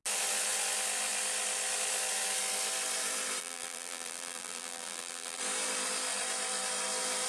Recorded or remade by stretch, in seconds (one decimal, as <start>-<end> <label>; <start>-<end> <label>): 0.0-3.4 recorded; 3.4-5.4 remade; 5.4-7.3 recorded